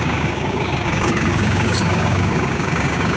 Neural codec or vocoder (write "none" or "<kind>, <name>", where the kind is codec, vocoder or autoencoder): codec, DAC